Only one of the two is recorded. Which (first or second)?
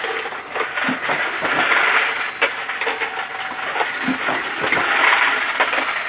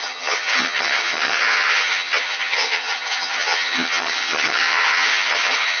first